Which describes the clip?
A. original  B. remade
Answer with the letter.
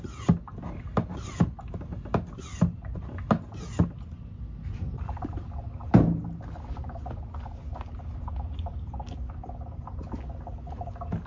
A